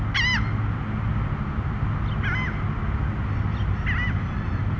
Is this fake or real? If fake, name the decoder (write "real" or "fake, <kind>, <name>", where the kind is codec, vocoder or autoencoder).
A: real